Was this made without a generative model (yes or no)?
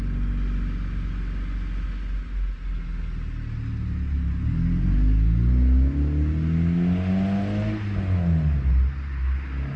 yes